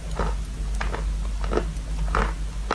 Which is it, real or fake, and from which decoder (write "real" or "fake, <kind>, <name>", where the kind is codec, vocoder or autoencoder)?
real